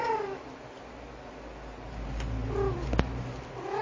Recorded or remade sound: recorded